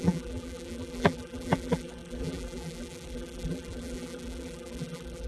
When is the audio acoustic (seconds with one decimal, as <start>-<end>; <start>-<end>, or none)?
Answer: none